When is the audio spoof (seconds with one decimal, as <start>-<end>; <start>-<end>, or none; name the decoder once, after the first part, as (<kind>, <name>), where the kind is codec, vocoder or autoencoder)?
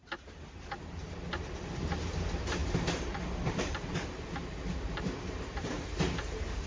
1.7-6.7 (vocoder, BigVGAN v2)